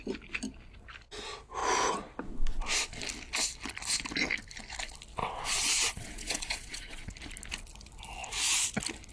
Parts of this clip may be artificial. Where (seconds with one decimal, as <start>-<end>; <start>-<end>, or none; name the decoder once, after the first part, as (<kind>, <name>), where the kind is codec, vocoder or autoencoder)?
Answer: 5.2-7.1 (vocoder, WaveNeXt)